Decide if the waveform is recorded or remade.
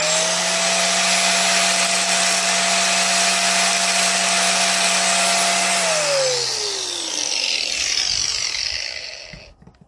recorded